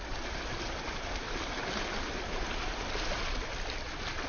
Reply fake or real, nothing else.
real